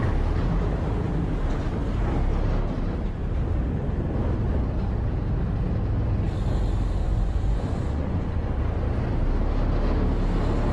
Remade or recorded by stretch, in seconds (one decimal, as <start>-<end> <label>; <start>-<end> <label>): 0.0-7.0 recorded; 7.0-8.6 remade; 8.6-10.7 recorded